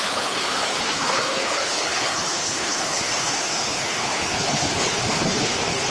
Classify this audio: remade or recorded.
remade